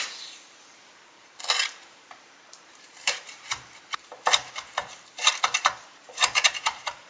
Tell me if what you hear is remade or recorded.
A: remade